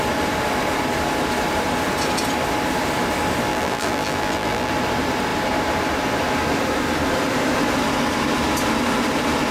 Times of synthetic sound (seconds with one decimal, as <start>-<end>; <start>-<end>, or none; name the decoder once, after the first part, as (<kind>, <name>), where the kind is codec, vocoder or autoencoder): 3.5-4.7 (vocoder, BigVGAN v2)